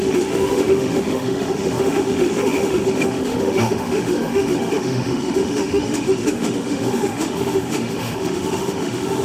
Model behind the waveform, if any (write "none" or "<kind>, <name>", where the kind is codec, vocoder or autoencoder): autoencoder, DAC-VAE